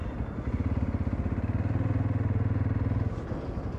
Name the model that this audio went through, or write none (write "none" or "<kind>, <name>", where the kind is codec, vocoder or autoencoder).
none